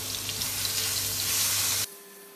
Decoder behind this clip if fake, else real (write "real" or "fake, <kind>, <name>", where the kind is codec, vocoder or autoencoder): real